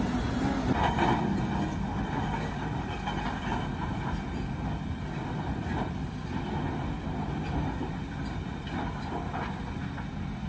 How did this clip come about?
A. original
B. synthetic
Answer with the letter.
A